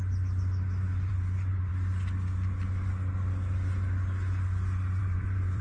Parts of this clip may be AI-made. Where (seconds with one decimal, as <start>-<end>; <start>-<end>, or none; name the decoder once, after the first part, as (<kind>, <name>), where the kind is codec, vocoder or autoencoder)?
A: 1.1-1.7 (vocoder, BigVGAN v2); 5.0-5.6